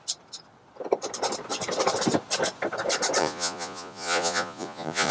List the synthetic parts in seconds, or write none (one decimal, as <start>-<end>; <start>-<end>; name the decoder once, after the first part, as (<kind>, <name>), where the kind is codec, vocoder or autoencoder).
3.2-5.1 (vocoder, Vocos)